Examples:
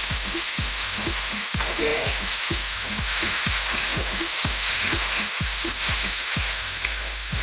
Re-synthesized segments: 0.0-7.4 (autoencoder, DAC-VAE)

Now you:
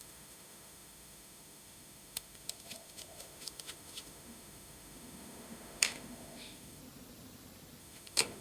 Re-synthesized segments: 0.0-6.8 (autoencoder, DAC-VAE); 7.8-8.4